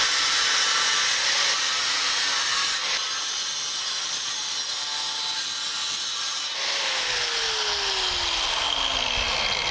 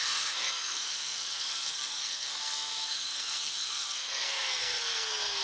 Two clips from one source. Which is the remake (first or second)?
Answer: second